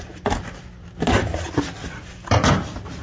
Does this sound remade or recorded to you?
recorded